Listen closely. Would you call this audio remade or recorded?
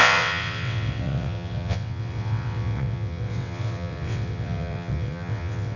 remade